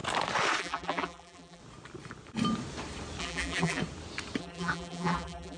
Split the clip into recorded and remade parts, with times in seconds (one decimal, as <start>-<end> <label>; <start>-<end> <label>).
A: 0.0-0.6 recorded; 0.6-1.6 remade; 1.6-3.2 recorded; 3.2-3.8 remade; 3.8-4.4 recorded; 4.4-5.6 remade